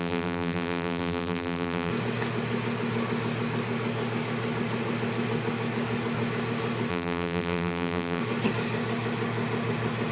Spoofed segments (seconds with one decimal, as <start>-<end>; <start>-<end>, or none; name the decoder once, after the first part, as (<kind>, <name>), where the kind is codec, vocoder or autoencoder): 0.0-1.9 (vocoder, BigVGAN v2); 6.9-8.2